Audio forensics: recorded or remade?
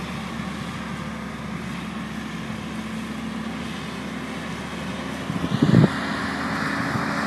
recorded